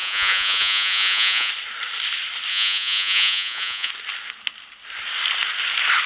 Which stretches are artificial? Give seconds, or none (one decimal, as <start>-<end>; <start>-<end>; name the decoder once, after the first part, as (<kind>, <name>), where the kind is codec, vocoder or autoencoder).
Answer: 0.0-1.5 (vocoder, Vocos); 2.5-3.9